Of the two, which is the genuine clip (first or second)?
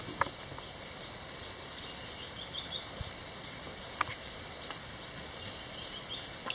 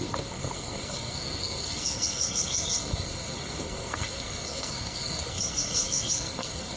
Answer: first